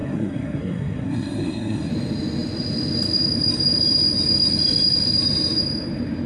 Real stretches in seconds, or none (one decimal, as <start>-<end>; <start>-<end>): 1.9-6.3